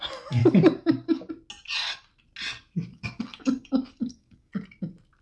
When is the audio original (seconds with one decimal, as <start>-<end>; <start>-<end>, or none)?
0.0-0.4; 1.3-2.9; 4.5-5.2